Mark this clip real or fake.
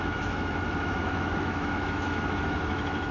fake